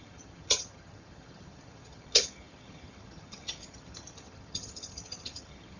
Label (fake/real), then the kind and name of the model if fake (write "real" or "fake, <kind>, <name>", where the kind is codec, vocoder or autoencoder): fake, vocoder, HiFi-GAN